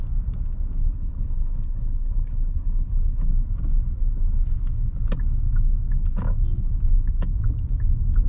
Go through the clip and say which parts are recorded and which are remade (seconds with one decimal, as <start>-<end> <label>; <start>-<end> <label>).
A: 0.0-0.8 recorded; 0.8-3.3 remade; 3.3-8.3 recorded